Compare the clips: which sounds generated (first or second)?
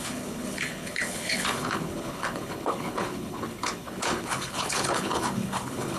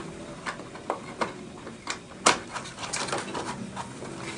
first